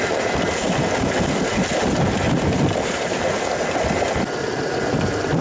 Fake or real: real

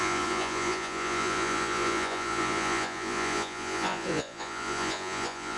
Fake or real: fake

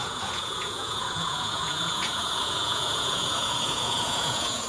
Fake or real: fake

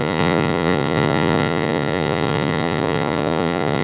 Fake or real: fake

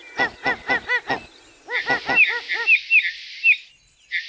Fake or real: real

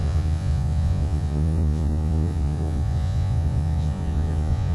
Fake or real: fake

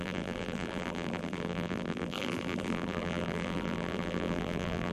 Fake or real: fake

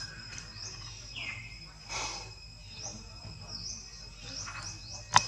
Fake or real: real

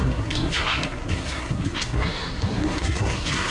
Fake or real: fake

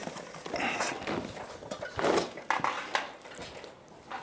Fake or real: real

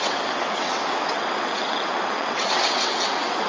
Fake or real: fake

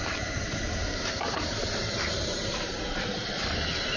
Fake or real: fake